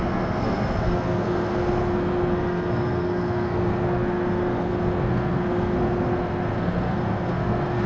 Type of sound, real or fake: fake